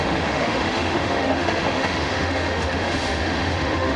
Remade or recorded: remade